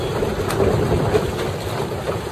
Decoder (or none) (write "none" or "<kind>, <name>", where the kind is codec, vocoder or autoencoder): none